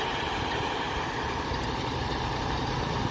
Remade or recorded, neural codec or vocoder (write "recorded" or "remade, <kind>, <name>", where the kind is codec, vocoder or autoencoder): remade, vocoder, BigVGAN v2